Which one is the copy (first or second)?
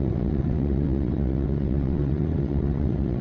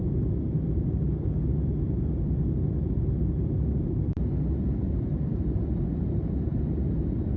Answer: first